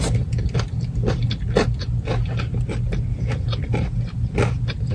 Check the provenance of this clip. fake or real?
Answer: real